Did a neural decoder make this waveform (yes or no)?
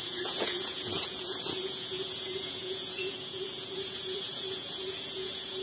yes